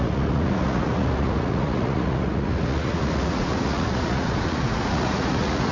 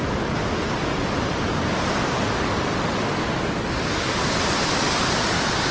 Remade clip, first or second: first